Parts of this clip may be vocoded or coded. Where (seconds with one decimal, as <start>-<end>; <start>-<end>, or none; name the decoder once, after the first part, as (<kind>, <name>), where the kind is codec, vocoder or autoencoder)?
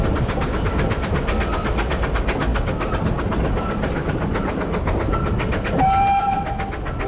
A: none